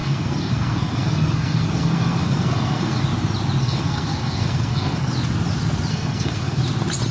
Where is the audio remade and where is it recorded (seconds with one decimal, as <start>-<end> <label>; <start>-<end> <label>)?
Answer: 0.0-3.0 remade; 3.0-3.6 recorded; 3.6-5.1 remade; 5.1-5.9 recorded; 5.9-6.6 remade; 6.6-7.1 recorded